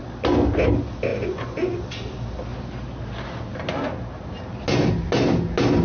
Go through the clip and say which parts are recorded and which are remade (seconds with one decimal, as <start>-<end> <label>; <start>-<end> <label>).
0.0-1.1 recorded; 1.1-1.8 remade; 1.8-5.8 recorded